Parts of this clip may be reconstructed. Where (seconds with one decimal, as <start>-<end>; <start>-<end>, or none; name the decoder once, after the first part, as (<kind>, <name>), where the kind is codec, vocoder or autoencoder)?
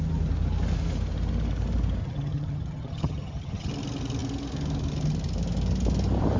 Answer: 2.0-3.7 (vocoder, HiFi-GAN)